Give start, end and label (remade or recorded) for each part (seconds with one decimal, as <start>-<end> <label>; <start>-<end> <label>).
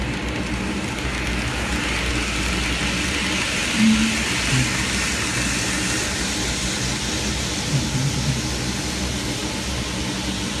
0.0-10.6 recorded